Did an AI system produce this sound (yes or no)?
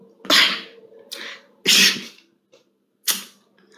no